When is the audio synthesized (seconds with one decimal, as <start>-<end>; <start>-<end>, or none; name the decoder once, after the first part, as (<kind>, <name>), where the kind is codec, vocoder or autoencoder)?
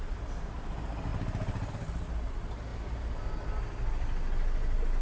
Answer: 1.1-1.7 (vocoder, BigVGAN v2)